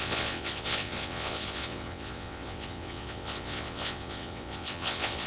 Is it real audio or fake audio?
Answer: fake